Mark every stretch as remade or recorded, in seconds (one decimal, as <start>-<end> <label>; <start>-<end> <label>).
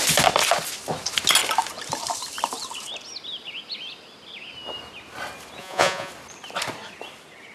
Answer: 0.0-5.6 recorded; 5.6-6.1 remade; 6.1-7.5 recorded